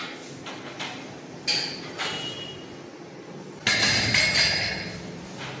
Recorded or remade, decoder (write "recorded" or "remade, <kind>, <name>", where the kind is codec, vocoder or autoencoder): recorded